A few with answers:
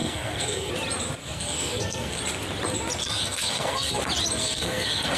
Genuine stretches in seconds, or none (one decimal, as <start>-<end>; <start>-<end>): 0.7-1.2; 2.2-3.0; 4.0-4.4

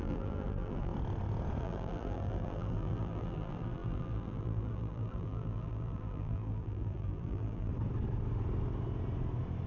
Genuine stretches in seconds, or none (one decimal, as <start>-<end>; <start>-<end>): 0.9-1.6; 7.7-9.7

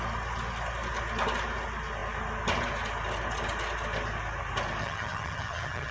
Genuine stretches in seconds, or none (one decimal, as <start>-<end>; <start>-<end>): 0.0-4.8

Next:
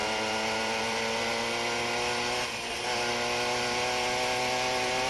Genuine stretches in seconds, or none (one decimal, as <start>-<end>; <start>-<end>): 0.0-5.1